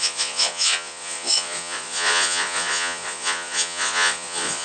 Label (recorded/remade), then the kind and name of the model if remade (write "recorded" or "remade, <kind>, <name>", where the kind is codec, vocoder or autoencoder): remade, vocoder, Vocos